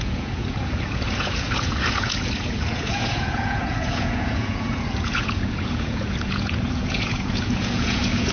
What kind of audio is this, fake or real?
fake